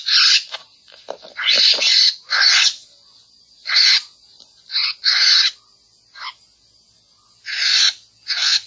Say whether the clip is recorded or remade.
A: recorded